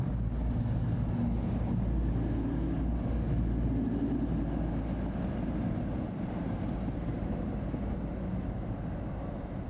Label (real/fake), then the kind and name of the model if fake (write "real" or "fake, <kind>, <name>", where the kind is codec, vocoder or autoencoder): real